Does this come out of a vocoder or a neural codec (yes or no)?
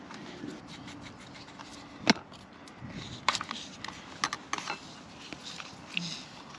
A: no